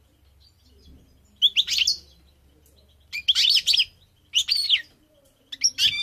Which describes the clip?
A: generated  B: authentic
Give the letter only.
B